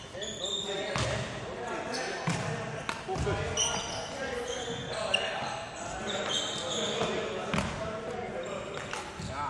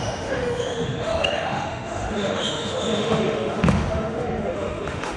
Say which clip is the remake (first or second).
second